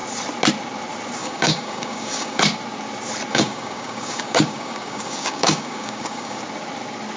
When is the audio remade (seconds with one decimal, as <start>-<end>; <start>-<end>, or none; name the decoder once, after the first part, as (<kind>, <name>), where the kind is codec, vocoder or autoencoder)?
1.2-2.4 (codec, DAC); 3.3-6.4